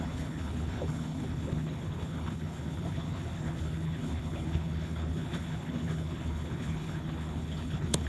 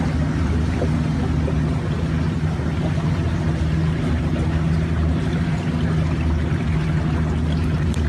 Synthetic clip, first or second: first